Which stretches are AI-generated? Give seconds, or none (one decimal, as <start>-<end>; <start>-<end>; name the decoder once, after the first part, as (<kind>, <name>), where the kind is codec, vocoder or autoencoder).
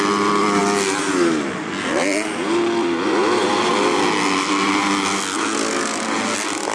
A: none